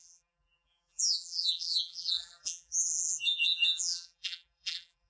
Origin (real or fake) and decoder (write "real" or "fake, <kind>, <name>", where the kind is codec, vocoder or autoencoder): fake, vocoder, BigVGAN v2